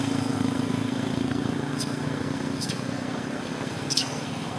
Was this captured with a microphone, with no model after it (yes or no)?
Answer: no